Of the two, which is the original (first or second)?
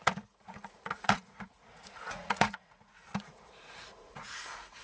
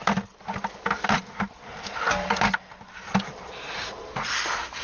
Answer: second